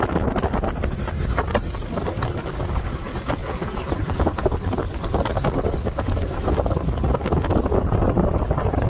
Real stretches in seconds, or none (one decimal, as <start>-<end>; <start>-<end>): 0.0-3.4; 3.9-8.9